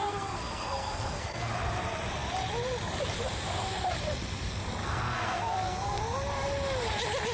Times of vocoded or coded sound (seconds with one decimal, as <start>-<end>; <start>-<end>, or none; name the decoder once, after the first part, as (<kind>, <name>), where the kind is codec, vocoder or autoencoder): 0.0-1.5 (codec, SNAC); 4.8-6.0